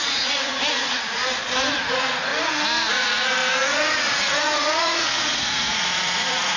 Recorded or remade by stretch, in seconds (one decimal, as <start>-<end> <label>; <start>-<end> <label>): 0.0-1.2 remade; 1.2-1.7 recorded; 1.7-2.3 remade; 2.3-2.9 recorded; 2.9-6.6 remade